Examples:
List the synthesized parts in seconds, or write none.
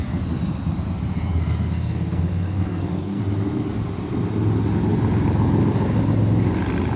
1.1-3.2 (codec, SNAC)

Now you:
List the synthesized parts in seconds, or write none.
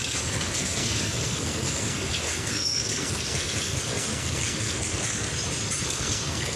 0.0-5.3 (codec, SNAC); 5.8-6.6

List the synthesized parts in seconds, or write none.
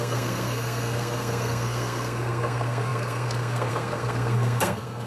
0.0-5.1 (codec, SNAC)